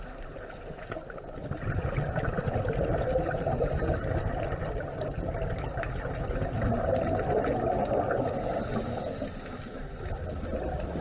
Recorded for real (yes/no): yes